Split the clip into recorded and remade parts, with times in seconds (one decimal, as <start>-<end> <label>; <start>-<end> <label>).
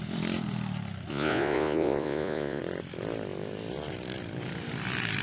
0.0-1.1 recorded; 1.1-2.6 remade; 2.6-5.2 recorded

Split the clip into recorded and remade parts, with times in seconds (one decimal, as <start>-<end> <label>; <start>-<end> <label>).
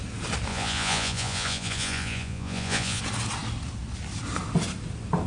0.0-0.5 recorded; 0.5-3.0 remade; 3.0-5.3 recorded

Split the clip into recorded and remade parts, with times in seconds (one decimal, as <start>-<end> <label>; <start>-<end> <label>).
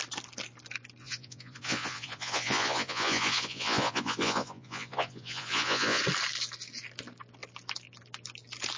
0.0-1.0 recorded; 1.0-6.0 remade; 6.0-8.8 recorded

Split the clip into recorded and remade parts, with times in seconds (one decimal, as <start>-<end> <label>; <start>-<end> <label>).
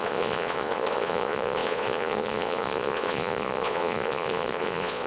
0.0-5.1 remade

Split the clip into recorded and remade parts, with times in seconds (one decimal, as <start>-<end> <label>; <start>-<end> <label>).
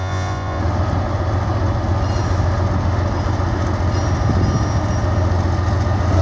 0.0-0.6 remade; 0.6-6.2 recorded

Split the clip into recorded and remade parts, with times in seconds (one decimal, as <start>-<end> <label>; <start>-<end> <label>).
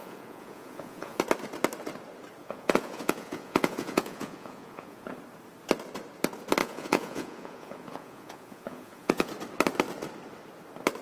0.0-1.2 remade; 1.2-2.4 recorded; 2.4-5.1 remade; 5.1-6.6 recorded; 6.6-9.3 remade; 9.3-11.0 recorded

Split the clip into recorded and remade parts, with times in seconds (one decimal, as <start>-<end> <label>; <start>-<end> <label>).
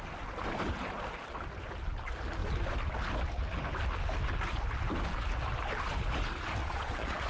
0.0-6.6 recorded; 6.6-7.3 remade